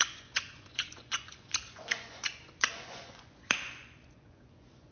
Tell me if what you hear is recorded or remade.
remade